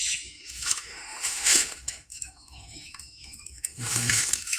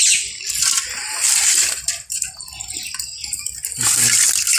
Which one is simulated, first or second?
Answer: first